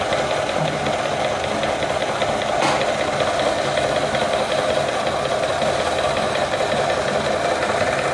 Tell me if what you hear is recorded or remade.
remade